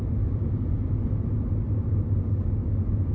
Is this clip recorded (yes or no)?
yes